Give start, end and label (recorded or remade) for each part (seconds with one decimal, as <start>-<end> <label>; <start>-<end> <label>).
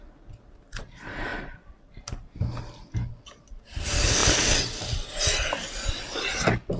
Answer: 0.0-6.8 recorded